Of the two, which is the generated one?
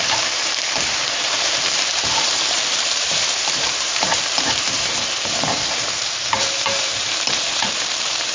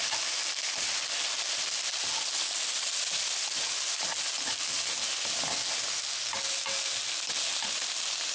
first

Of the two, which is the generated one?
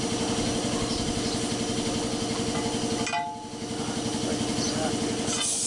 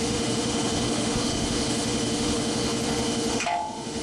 second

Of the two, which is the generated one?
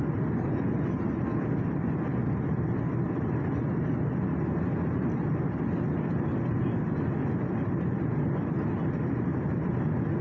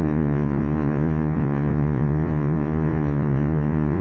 second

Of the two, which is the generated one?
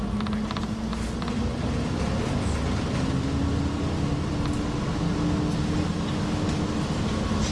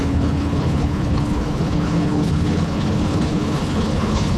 second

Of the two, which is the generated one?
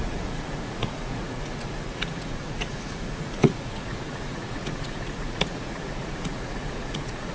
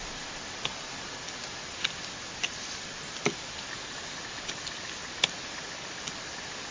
first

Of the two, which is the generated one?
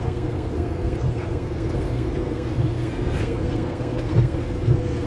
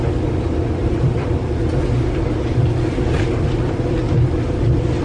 first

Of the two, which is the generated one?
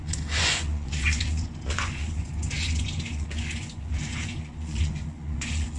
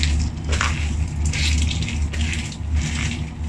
first